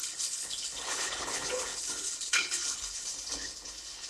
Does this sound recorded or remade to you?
remade